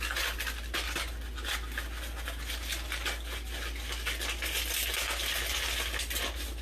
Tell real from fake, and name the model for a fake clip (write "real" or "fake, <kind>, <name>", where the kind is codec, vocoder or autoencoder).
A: real